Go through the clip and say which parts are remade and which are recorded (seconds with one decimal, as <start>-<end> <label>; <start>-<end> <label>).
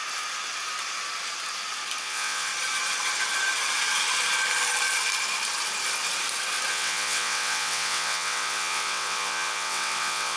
0.0-2.0 recorded; 2.0-2.5 remade; 2.5-6.7 recorded; 6.7-10.4 remade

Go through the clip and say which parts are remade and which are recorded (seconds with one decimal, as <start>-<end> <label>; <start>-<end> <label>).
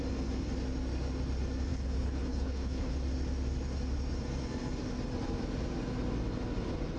0.0-1.7 recorded; 1.7-2.9 remade; 2.9-7.0 recorded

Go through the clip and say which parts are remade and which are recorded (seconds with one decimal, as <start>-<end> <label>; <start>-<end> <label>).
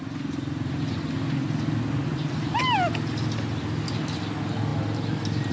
0.0-5.5 recorded